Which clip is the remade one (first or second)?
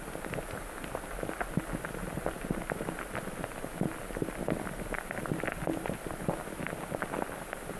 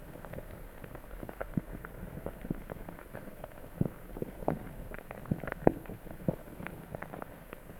second